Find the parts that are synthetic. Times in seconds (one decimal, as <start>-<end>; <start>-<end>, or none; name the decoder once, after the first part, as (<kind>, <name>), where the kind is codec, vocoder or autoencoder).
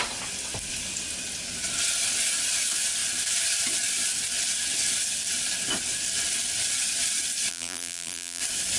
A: 7.5-8.4 (vocoder, BigVGAN v2)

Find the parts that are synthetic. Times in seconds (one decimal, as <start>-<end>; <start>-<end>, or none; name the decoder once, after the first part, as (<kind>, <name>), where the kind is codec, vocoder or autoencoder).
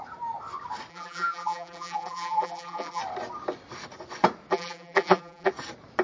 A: 0.9-3.0 (vocoder, BigVGAN v2); 4.5-5.5